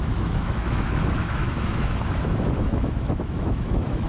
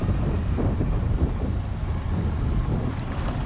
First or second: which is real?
second